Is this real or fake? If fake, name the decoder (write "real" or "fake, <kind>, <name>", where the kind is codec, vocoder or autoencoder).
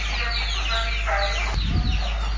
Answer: real